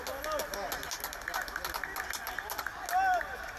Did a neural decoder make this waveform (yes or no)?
no